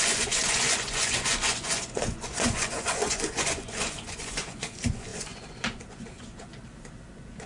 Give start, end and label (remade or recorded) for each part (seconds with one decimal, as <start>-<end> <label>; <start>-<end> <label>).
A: 0.0-6.5 remade; 6.5-7.1 recorded; 7.1-7.5 remade